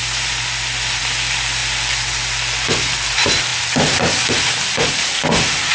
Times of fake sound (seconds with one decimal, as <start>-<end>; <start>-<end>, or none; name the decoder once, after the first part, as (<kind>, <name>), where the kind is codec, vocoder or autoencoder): 1.6-2.2 (vocoder, BigVGAN v2); 3.5-4.1